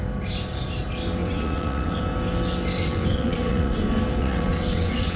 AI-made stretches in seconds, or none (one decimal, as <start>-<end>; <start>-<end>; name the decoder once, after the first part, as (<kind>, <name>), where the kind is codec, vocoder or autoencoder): 1.2-2.0 (vocoder, WaveNeXt); 2.8-3.8; 4.2-5.2